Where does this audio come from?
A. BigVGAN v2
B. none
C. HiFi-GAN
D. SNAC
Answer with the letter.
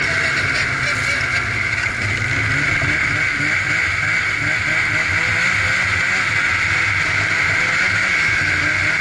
B